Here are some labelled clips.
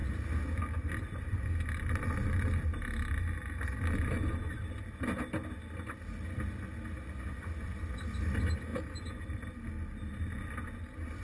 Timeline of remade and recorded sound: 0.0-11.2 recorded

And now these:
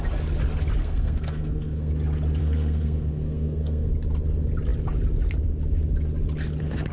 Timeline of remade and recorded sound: 0.0-0.8 recorded; 0.8-1.9 remade; 1.9-2.4 recorded; 2.4-3.9 remade; 3.9-6.9 recorded

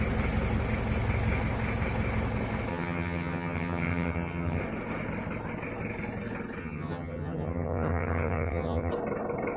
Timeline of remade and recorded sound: 0.0-2.7 recorded; 2.7-4.6 remade; 4.6-6.6 recorded; 6.6-8.9 remade; 8.9-9.6 recorded